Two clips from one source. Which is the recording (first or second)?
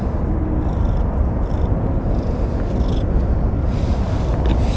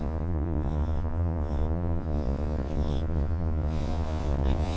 first